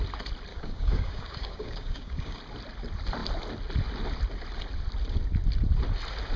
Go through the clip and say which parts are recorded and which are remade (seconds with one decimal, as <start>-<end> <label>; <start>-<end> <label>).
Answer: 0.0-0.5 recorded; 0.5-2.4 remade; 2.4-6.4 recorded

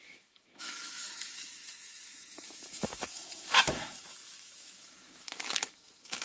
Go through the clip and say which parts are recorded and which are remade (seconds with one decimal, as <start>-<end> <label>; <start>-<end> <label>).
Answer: 0.0-6.2 remade

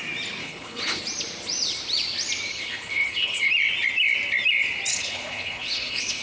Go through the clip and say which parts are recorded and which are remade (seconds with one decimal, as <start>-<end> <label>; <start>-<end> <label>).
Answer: 0.0-0.4 recorded; 0.4-1.0 remade; 1.0-2.5 recorded; 2.5-3.5 remade; 3.5-4.9 recorded; 4.9-6.2 remade